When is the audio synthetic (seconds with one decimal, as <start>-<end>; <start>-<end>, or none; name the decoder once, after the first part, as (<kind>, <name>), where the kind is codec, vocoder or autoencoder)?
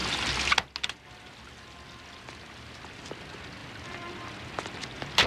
3.6-4.1 (vocoder, BigVGAN v2)